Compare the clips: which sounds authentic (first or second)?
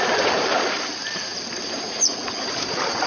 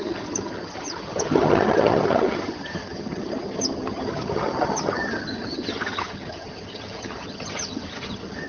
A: first